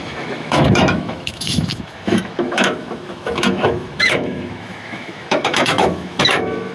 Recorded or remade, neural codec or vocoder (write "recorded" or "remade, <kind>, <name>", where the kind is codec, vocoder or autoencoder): remade, autoencoder, DAC-VAE